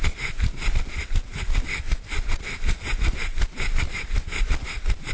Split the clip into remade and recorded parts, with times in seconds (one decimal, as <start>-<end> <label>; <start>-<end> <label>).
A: 0.0-5.1 recorded